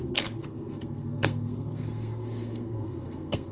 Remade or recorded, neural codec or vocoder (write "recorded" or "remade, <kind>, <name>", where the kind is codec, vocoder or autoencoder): remade, codec, SNAC